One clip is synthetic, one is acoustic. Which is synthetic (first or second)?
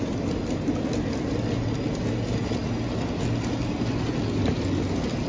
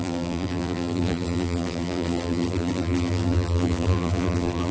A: second